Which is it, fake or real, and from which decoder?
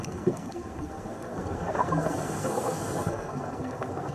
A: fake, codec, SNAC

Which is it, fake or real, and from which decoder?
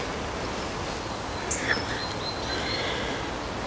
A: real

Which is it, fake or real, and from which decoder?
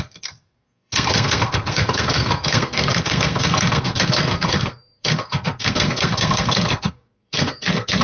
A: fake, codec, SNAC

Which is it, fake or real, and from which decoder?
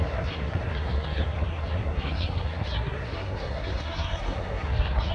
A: fake, codec, SNAC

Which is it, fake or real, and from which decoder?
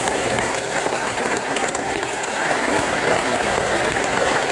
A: fake, codec, SNAC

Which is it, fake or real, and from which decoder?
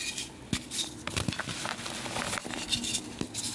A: real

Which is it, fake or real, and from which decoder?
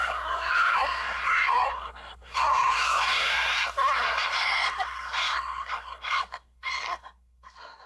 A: fake, codec, SNAC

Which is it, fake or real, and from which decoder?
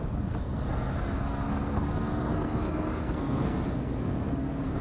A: fake, codec, SNAC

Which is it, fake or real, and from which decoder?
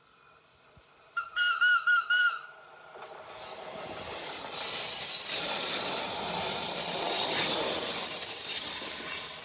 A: real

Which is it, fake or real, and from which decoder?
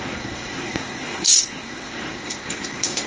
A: fake, codec, SNAC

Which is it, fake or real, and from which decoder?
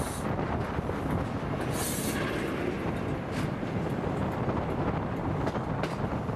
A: real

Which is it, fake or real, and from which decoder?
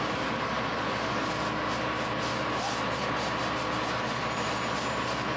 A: real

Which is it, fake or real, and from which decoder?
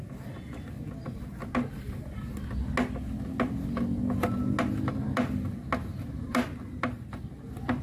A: real